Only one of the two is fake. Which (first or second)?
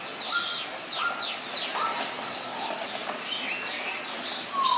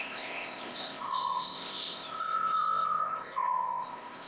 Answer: second